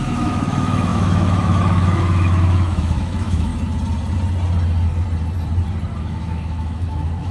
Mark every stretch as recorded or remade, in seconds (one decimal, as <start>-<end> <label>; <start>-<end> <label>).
0.0-3.5 remade; 3.5-6.0 recorded; 6.0-7.3 remade